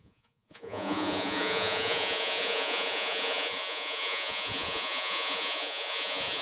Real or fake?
fake